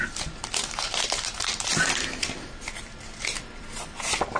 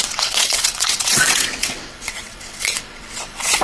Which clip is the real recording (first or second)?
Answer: first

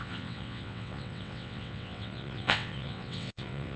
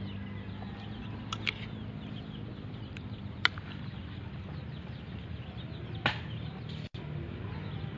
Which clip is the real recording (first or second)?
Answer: second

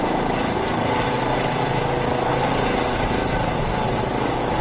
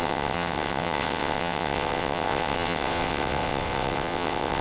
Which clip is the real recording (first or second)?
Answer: first